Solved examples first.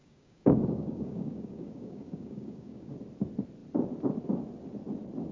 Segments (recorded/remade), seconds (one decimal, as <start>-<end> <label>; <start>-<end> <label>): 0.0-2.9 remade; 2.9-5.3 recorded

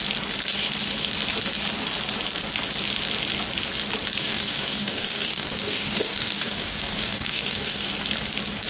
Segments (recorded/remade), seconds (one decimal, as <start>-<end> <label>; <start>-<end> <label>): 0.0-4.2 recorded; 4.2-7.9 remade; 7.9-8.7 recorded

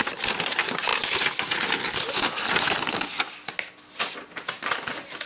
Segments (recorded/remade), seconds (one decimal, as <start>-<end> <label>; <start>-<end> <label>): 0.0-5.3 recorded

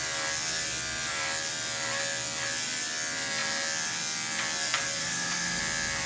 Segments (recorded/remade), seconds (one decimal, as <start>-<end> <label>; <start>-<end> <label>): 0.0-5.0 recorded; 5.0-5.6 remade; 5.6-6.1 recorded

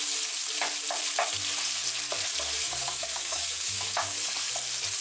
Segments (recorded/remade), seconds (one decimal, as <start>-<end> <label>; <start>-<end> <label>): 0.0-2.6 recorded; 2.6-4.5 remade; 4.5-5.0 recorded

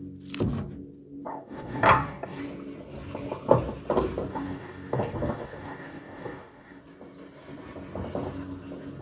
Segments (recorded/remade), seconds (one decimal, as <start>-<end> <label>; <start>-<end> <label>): 0.0-1.3 recorded; 1.3-2.4 remade; 2.4-4.3 recorded; 4.3-6.8 remade; 6.8-9.0 recorded

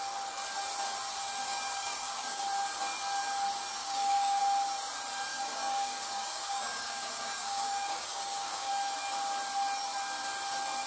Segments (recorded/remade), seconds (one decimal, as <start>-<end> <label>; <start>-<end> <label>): 0.0-1.4 recorded; 1.4-2.4 remade; 2.4-3.8 recorded; 3.8-4.4 remade; 4.4-5.3 recorded; 5.3-8.7 remade; 8.7-10.9 recorded

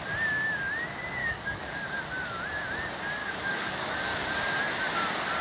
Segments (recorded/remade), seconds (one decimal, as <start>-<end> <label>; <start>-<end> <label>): 0.0-1.2 recorded; 1.2-1.7 remade; 1.7-3.2 recorded; 3.2-4.0 remade; 4.0-5.4 recorded